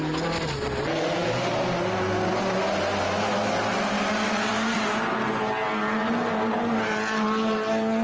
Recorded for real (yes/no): yes